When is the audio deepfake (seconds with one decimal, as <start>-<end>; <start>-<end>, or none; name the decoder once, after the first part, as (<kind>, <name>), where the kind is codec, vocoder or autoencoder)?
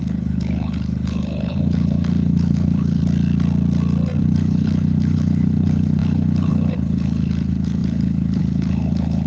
0.0-3.0 (codec, HILCodec); 4.2-9.3